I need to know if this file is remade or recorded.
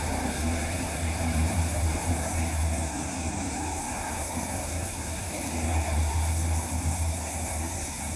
remade